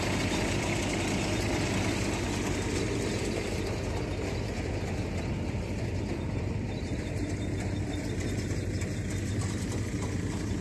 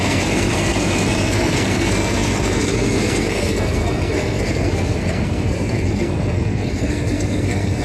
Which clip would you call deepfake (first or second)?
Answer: second